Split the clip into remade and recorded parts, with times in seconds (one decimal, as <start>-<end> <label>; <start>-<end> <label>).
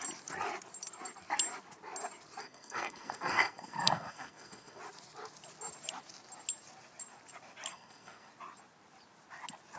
0.0-2.4 recorded; 2.4-4.8 remade; 4.8-7.7 recorded; 7.7-8.3 remade; 8.3-9.8 recorded